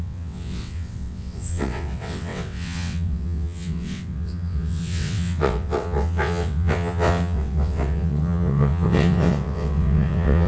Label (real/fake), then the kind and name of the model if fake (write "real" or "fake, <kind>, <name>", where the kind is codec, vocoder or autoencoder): fake, vocoder, WaveNeXt